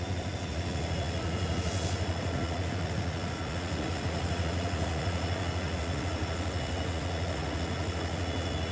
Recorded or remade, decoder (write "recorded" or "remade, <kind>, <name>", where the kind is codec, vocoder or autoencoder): remade, vocoder, Vocos